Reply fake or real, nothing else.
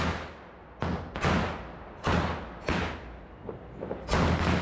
real